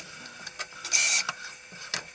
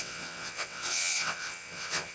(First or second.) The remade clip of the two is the second